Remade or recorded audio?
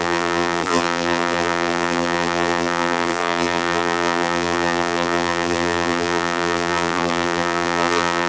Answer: remade